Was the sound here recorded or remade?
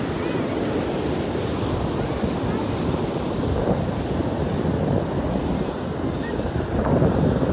recorded